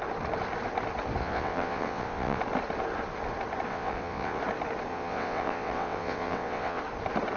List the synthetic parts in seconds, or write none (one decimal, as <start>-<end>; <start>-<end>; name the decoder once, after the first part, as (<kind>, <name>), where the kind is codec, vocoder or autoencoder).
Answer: 1.2-2.4 (vocoder, WaveNeXt); 3.7-4.4; 4.9-6.8